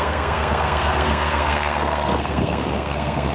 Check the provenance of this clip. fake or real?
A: fake